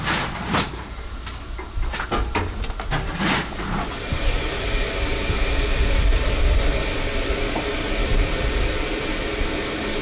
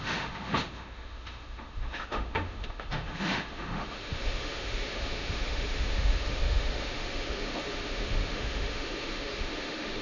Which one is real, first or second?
first